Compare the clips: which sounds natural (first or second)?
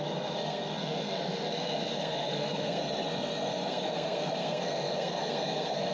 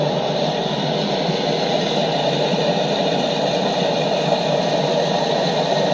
second